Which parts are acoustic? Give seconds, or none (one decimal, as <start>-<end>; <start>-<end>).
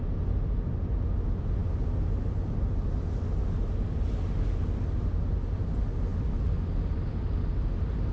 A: 0.0-8.1